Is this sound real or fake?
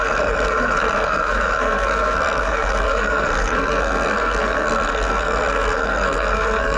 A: fake